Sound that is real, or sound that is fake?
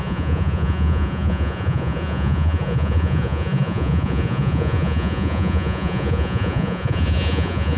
fake